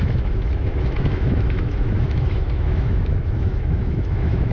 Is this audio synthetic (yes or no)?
yes